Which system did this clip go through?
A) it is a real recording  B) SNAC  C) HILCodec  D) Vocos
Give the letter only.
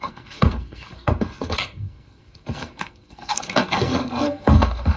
B